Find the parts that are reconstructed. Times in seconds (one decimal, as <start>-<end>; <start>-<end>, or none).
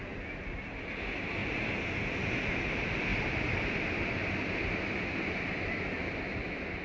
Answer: none